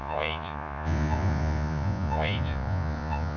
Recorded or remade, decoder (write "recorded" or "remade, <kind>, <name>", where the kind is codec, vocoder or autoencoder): remade, vocoder, Vocos